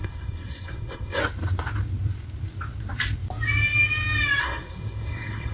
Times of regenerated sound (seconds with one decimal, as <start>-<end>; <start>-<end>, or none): 0.0-1.2; 4.4-5.5